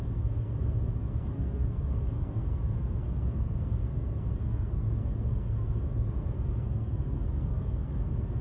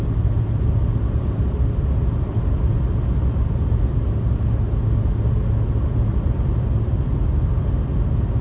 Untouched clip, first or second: second